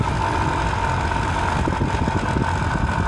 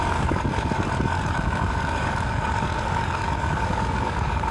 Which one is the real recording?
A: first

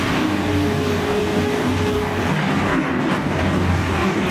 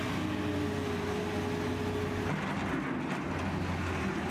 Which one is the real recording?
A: second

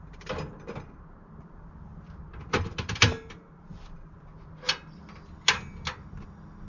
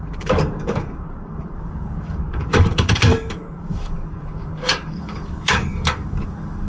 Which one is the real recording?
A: first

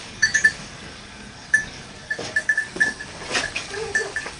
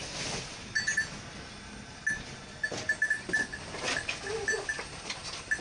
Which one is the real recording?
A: second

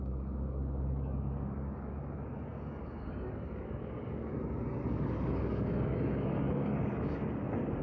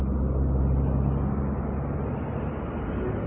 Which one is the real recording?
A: second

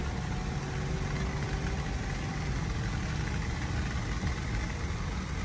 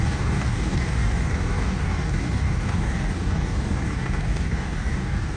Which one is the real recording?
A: first